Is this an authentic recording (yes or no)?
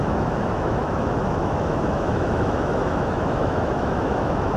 no